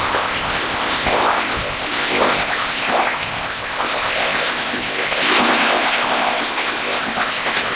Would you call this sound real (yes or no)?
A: no